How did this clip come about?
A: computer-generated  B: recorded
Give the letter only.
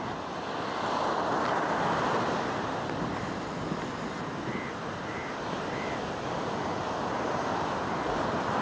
B